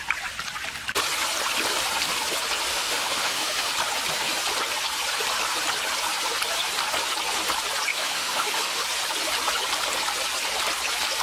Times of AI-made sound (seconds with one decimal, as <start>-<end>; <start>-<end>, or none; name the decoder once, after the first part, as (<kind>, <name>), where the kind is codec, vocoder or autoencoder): 2.7-3.7 (autoencoder, DAC-VAE); 7.9-8.8